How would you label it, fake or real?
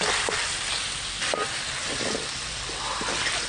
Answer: real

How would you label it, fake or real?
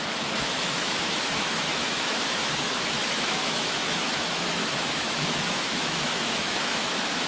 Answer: fake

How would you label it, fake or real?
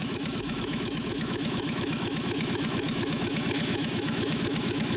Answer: fake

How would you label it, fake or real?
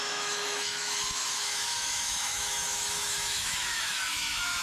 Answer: fake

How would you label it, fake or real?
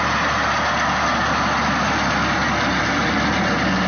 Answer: real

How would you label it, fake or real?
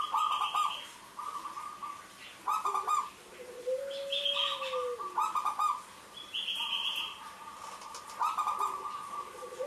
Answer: real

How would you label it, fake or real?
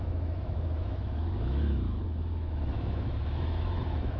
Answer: fake